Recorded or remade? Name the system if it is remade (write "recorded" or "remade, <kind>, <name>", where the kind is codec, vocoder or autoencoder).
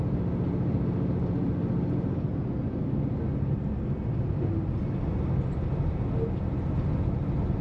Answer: recorded